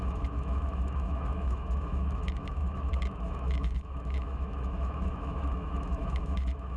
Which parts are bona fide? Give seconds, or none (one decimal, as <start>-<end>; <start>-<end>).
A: none